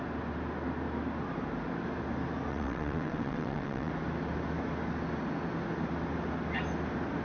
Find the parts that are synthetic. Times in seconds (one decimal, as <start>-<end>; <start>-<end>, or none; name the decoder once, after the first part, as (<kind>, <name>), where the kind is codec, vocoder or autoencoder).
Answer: 2.5-3.9 (vocoder, WaveNeXt)